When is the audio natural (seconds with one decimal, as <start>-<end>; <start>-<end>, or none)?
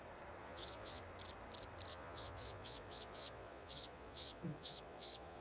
0.0-0.4; 1.0-1.9